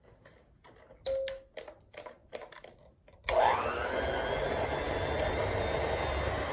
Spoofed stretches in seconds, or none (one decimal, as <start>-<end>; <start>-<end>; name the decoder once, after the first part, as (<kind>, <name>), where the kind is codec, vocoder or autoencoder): none